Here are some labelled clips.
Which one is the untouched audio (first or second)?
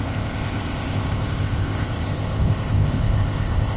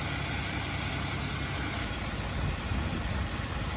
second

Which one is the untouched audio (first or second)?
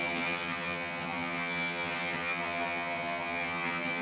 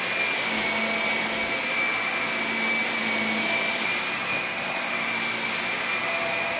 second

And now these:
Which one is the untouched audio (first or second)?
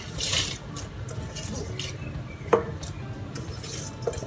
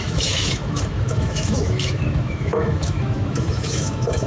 first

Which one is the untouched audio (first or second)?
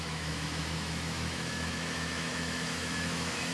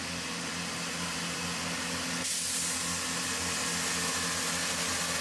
second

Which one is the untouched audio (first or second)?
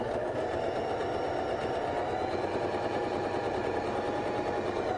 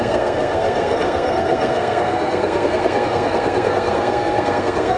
first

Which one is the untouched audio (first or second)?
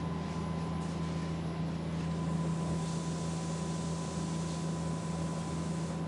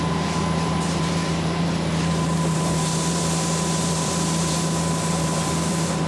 first